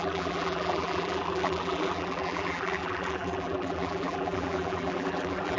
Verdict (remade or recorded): remade